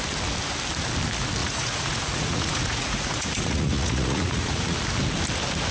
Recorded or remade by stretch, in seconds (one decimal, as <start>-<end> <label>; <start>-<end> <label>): 0.0-1.4 recorded; 1.4-4.8 remade; 4.8-5.7 recorded